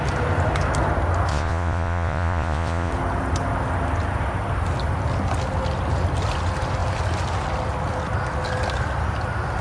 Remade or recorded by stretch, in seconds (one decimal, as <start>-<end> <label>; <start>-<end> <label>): 0.0-1.3 recorded; 1.3-2.9 remade; 2.9-9.6 recorded